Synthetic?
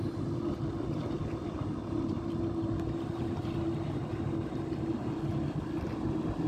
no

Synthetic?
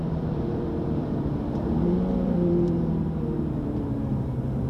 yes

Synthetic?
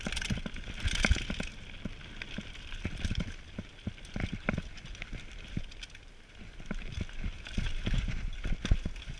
no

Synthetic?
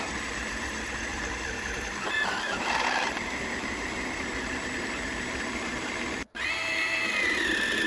no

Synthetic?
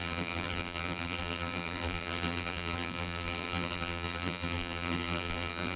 yes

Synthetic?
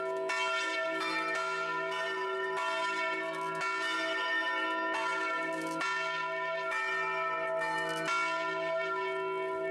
no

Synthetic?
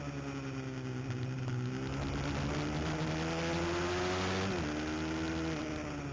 no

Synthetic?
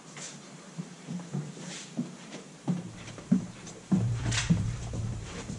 yes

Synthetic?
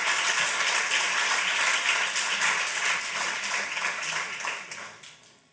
no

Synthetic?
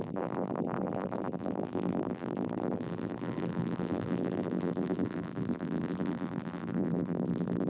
yes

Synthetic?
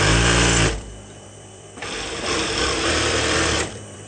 yes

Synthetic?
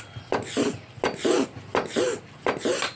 no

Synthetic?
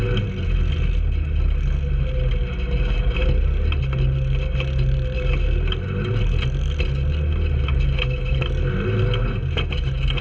no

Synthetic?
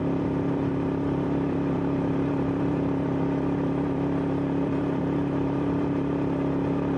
yes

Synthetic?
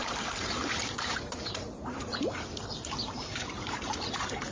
yes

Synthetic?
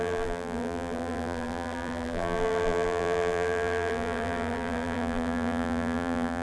yes